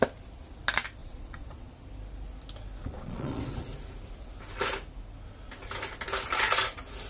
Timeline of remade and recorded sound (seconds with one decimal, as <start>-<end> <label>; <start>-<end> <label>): 0.0-1.0 recorded; 1.0-1.7 remade; 1.7-2.8 recorded; 2.8-3.4 remade; 3.4-7.1 recorded